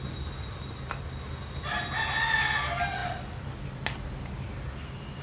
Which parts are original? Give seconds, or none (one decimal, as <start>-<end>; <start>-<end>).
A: 0.0-5.2